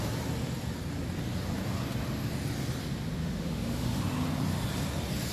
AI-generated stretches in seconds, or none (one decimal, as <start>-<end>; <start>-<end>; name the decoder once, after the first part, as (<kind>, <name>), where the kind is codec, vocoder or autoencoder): 3.2-4.0 (autoencoder, DAC-VAE)